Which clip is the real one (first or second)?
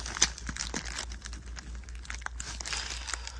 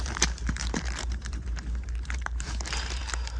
first